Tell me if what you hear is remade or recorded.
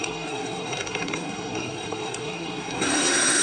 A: remade